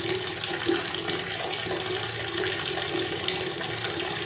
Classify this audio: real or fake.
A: real